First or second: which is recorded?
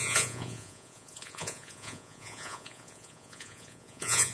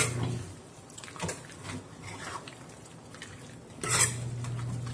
second